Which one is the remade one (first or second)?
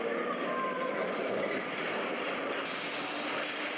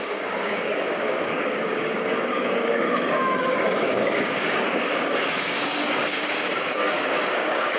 second